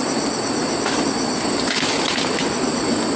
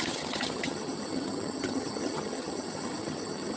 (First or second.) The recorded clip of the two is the first